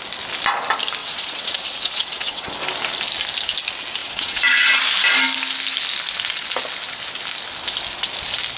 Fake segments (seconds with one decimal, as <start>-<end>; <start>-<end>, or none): 1.0-2.5; 4.0-4.8